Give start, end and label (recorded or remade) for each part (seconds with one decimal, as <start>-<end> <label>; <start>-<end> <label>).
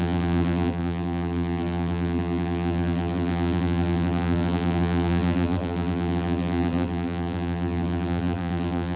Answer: 0.0-9.0 remade